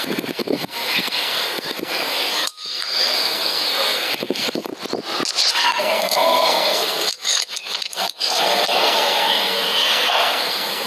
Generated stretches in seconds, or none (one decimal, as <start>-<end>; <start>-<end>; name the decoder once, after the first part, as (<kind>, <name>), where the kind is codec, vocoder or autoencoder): 0.0-4.7 (codec, SNAC); 5.5-10.9